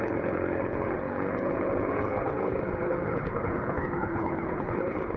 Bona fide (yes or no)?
no